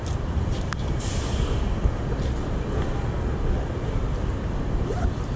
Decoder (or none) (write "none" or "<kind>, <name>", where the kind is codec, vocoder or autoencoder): none